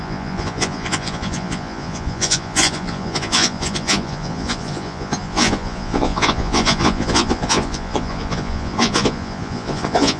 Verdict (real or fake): fake